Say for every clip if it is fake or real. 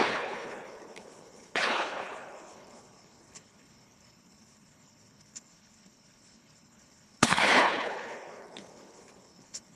fake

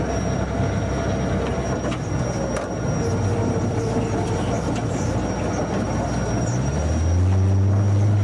real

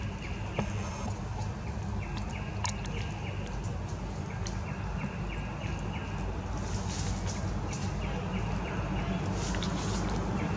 real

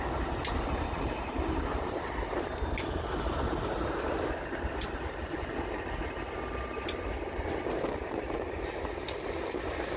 real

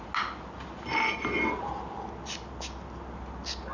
real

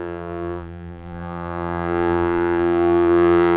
fake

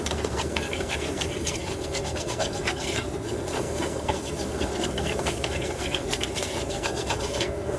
fake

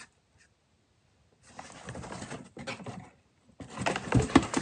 real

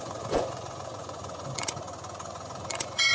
fake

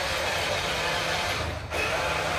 real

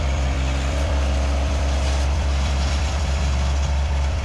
fake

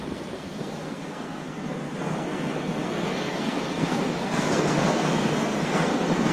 fake